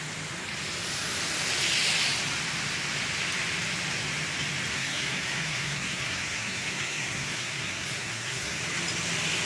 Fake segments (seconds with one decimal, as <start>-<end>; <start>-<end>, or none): 4.7-8.6